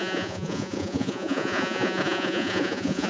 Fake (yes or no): yes